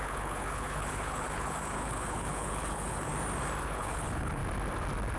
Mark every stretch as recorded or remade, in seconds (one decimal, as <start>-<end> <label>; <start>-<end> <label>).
0.0-3.1 remade; 3.1-3.6 recorded; 3.6-4.4 remade; 4.4-5.2 recorded